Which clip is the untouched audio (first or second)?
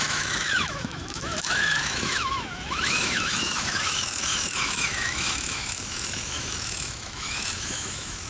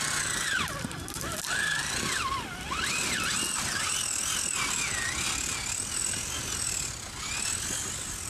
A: second